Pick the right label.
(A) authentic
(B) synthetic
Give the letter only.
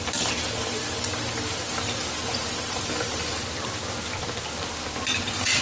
B